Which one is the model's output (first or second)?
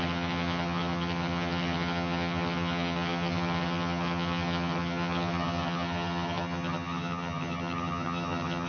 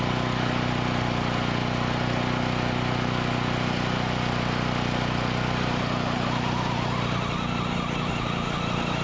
first